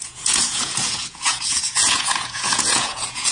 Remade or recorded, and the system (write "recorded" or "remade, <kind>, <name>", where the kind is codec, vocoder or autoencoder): remade, vocoder, Vocos